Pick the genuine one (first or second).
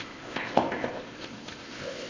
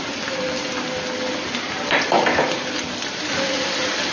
second